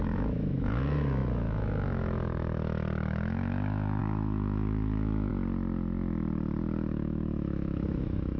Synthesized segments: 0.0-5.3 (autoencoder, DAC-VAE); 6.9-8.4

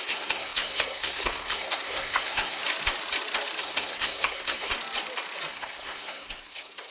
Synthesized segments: 0.0-2.6 (codec, SNAC); 3.6-4.7; 5.5-6.9

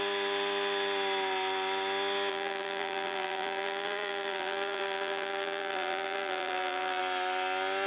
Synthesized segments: 2.3-7.0 (vocoder, BigVGAN v2)